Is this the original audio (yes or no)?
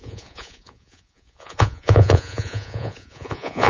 no